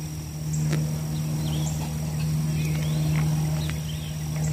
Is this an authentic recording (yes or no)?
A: yes